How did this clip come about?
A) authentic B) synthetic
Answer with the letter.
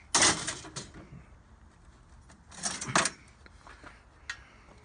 A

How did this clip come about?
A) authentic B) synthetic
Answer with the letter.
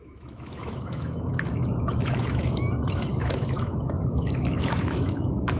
B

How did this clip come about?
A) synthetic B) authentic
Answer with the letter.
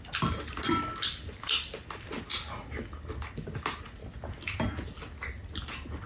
B